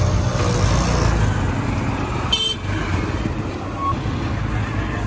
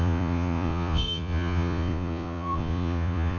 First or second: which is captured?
first